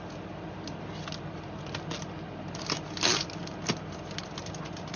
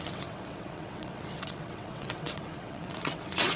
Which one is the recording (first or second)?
first